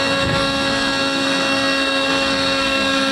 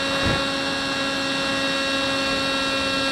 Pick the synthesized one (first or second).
first